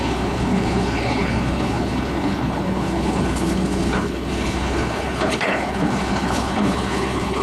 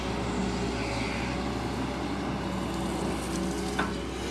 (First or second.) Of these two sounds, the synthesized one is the first